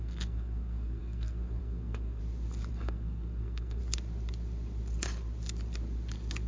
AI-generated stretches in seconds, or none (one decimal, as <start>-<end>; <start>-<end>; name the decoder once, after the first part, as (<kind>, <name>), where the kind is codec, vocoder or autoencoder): 0.0-2.2 (codec, SNAC); 2.7-3.8